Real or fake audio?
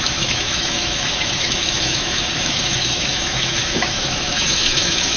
fake